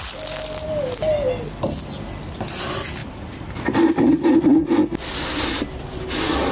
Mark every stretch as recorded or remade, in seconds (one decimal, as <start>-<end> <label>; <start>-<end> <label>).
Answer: 0.0-3.0 recorded; 3.0-4.4 remade; 4.4-6.5 recorded